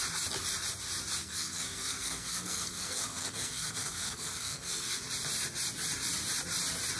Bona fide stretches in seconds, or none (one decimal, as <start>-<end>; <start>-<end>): 0.0-1.2; 5.0-7.0